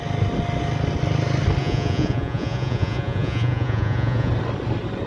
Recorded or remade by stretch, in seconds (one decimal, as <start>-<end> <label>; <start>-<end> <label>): 0.0-1.6 recorded; 1.6-4.3 remade; 4.3-5.1 recorded